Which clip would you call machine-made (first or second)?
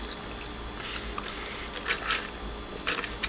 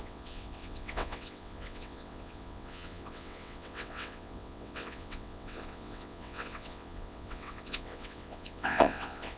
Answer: second